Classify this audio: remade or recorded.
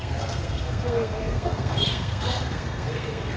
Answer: remade